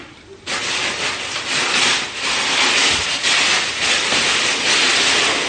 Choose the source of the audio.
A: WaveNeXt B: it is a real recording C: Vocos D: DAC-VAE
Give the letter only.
B